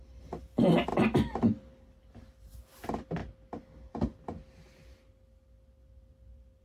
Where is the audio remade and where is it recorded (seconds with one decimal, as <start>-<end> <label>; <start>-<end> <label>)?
0.0-6.6 recorded